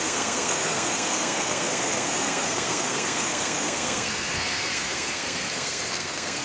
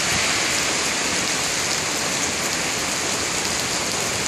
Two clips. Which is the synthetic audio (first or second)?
first